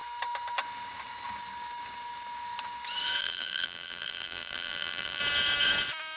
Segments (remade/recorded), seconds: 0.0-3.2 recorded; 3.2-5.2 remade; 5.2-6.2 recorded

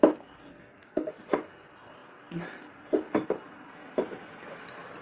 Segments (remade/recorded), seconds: 0.0-0.5 recorded; 0.5-1.1 remade; 1.1-5.0 recorded

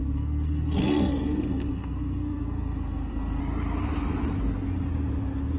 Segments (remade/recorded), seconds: 0.0-3.4 remade; 3.4-5.6 recorded

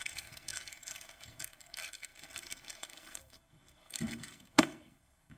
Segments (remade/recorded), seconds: 0.0-5.4 remade

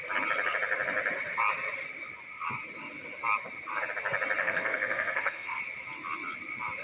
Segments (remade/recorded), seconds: 0.0-4.4 recorded; 4.4-5.6 remade; 5.6-6.8 recorded

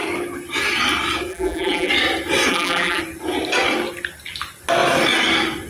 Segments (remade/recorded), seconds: 0.0-1.3 recorded; 1.3-1.9 remade; 1.9-2.5 recorded; 2.5-3.0 remade; 3.0-5.7 recorded

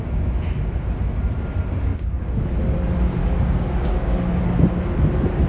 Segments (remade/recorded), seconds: 0.0-1.9 recorded; 1.9-2.5 remade; 2.5-3.2 recorded; 3.2-4.4 remade; 4.4-5.5 recorded